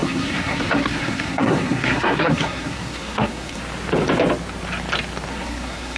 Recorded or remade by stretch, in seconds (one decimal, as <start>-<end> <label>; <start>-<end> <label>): 0.0-3.6 remade; 3.6-5.3 recorded; 5.3-6.0 remade